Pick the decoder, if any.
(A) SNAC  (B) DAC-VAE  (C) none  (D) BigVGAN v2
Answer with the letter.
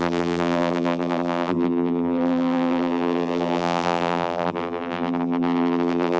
D